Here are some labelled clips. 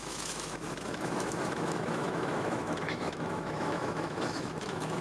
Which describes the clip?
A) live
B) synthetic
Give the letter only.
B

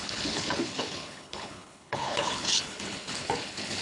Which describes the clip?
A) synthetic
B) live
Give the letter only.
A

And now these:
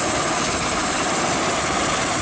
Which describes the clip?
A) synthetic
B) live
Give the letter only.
B